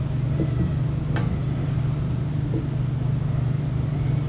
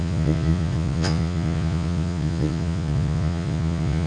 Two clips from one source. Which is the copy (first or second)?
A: second